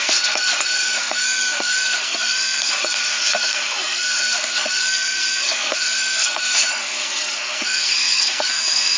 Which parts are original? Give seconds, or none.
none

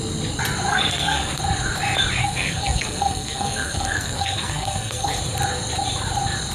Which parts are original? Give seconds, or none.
0.0-0.7; 1.4-2.2; 5.1-6.5

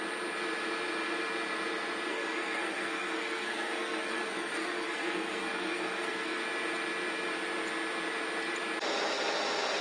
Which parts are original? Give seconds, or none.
0.0-2.1; 6.4-9.8

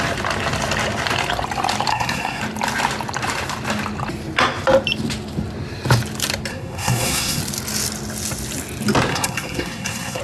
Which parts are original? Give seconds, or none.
0.0-1.9; 2.4-6.5; 7.4-9.1

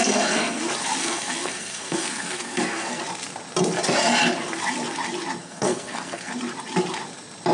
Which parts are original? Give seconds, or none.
0.6-1.0; 3.0-5.4; 6.3-7.5

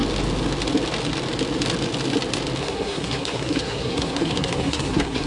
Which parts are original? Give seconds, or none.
0.0-2.6